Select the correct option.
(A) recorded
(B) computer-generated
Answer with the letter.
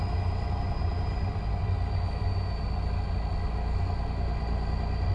A